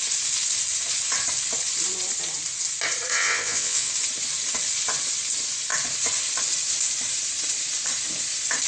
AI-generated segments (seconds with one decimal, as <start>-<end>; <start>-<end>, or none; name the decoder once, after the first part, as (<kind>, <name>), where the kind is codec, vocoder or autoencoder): 3.1-3.9 (vocoder, WaveNeXt)

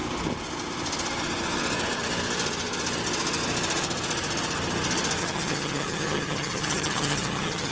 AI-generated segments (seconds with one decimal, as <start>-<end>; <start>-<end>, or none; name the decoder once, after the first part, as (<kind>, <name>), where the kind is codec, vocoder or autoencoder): 5.2-7.7 (vocoder, HiFi-GAN)

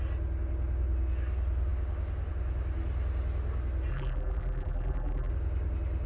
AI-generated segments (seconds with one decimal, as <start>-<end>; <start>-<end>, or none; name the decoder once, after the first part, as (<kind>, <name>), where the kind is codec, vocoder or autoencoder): 3.9-5.3 (vocoder, BigVGAN v2)

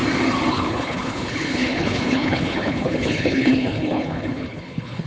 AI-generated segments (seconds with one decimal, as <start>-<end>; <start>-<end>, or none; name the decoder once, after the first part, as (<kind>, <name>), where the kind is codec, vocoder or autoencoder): 0.5-5.1 (codec, HILCodec)

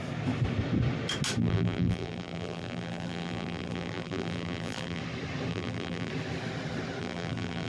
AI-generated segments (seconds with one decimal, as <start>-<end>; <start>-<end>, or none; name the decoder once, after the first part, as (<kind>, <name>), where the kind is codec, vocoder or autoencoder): 1.4-5.0 (vocoder, BigVGAN v2); 5.5-6.1; 7.0-7.7

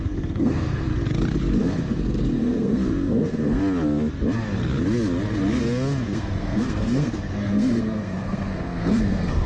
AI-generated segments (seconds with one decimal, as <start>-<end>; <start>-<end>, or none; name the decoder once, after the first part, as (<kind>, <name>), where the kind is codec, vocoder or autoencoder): 0.0-0.9 (codec, SNAC); 1.6-3.6; 6.0-9.5

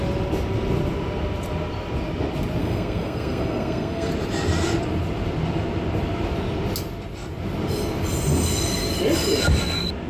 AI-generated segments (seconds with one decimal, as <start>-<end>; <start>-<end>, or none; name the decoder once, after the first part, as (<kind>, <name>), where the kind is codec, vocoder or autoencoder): 2.6-4.1 (codec, SNAC)

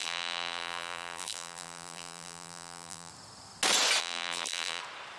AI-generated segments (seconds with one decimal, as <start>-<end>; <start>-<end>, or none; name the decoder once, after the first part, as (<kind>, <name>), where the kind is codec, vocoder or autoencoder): 0.0-3.1 (vocoder, BigVGAN v2); 4.0-4.8